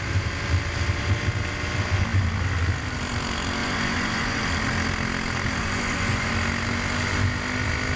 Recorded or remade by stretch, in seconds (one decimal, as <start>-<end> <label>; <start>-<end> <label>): 0.0-3.6 recorded; 3.6-4.4 remade; 4.4-5.6 recorded; 5.6-6.3 remade; 6.3-8.0 recorded